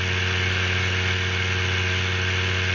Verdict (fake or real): real